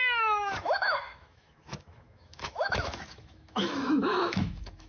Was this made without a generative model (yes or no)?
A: no